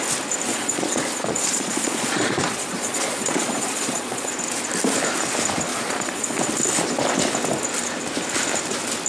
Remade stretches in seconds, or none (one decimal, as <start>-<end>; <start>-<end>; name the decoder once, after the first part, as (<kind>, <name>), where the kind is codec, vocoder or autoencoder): 0.5-4.3 (vocoder, Vocos); 5.7-6.5